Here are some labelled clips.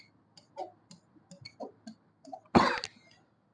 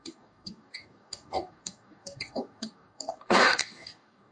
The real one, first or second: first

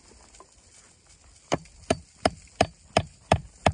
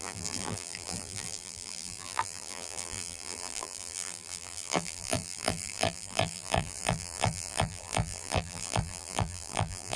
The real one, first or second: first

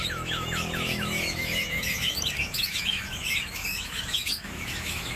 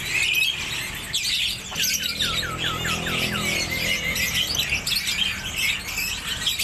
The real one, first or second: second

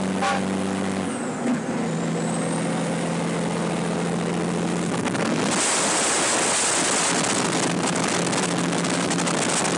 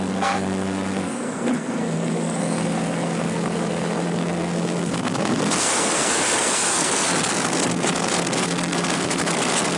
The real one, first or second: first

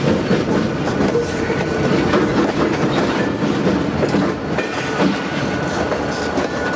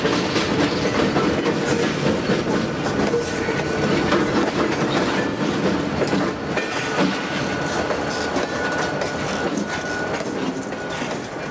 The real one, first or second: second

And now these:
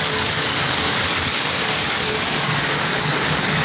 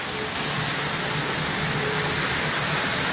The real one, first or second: second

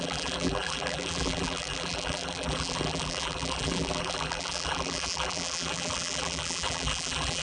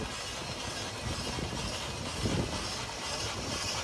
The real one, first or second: second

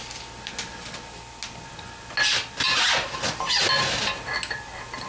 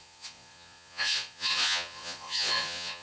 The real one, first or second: first